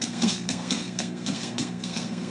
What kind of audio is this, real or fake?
fake